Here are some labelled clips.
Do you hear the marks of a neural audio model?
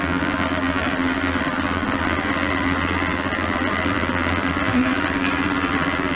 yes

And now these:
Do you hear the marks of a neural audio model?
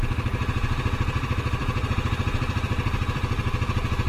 yes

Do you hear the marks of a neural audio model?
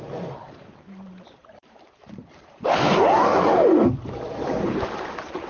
yes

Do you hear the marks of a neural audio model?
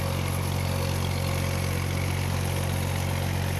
no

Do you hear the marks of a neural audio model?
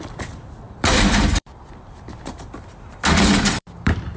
yes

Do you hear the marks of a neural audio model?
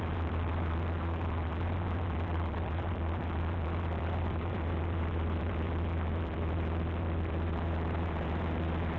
yes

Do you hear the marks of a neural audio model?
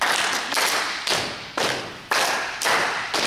no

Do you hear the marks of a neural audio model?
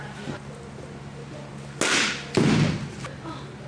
no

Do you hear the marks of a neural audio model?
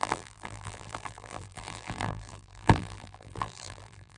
yes